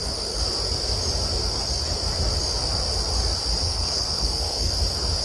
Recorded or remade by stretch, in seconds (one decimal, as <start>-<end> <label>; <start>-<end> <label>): 0.0-3.6 recorded; 3.6-4.7 remade; 4.7-5.2 recorded